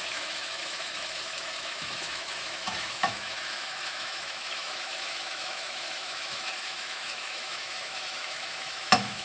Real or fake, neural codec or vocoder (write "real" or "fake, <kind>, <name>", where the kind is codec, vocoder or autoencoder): fake, autoencoder, DAC-VAE